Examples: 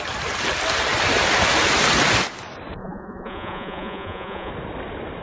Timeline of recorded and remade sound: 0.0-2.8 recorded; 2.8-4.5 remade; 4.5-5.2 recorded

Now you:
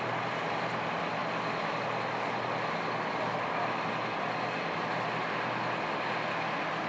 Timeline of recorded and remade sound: 0.0-6.9 recorded

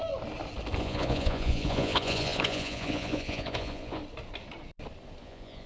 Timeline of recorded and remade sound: 0.0-0.8 recorded; 0.8-4.0 remade; 4.0-5.2 recorded; 5.2-5.7 remade

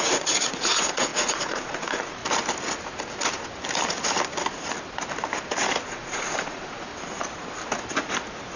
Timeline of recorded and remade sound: 0.0-2.2 remade; 2.2-5.9 recorded; 5.9-6.9 remade; 6.9-8.6 recorded

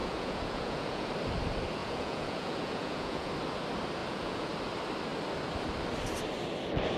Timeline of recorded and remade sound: 0.0-1.1 remade; 1.1-1.8 recorded; 1.8-3.3 remade; 3.3-4.0 recorded; 4.0-4.5 remade; 4.5-7.0 recorded

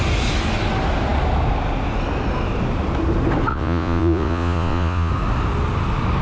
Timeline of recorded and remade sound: 0.0-3.5 recorded; 3.5-5.1 remade; 5.1-6.2 recorded

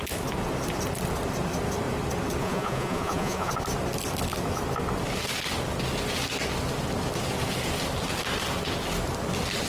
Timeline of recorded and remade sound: 0.0-2.4 recorded; 2.4-3.5 remade; 3.5-9.7 recorded